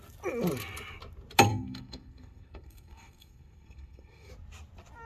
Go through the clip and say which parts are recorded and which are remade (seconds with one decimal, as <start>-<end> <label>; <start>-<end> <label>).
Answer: 0.0-1.5 recorded; 1.5-4.3 remade; 4.3-5.1 recorded